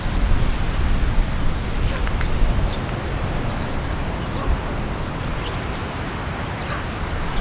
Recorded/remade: recorded